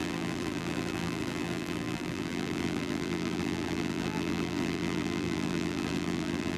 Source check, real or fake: fake